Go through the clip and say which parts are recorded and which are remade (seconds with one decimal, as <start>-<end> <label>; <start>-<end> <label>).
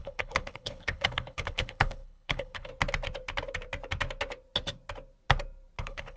0.0-2.7 remade; 2.7-5.8 recorded; 5.8-6.2 remade